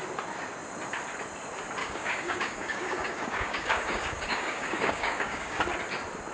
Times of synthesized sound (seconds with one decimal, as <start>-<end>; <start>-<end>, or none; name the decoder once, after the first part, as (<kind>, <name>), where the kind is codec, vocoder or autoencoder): 1.8-5.6 (codec, DAC)